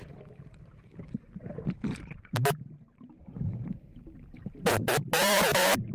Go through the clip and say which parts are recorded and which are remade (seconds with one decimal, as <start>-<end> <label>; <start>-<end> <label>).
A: 0.0-5.9 remade